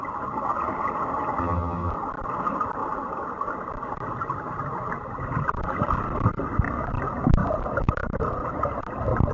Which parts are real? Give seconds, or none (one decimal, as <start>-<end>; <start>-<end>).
0.0-1.4; 1.9-9.3